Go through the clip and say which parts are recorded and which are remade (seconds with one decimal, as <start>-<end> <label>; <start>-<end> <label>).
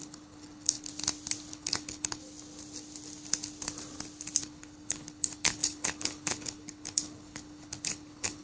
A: 0.0-0.9 remade; 0.9-1.5 recorded; 1.5-2.2 remade; 2.2-4.4 recorded; 4.4-8.4 remade